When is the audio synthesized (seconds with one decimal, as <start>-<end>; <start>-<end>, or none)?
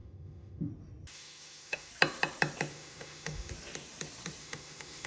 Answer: 0.0-0.7; 1.1-1.9; 2.7-3.5; 4.4-5.1